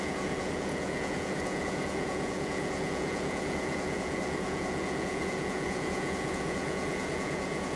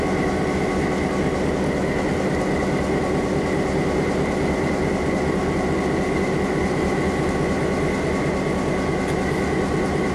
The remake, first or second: first